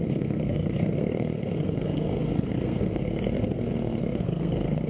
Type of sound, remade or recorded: remade